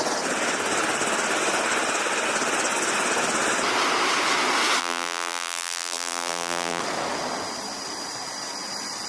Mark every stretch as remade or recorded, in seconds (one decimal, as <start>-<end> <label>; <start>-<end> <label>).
0.0-4.8 recorded; 4.8-6.8 remade; 6.8-9.1 recorded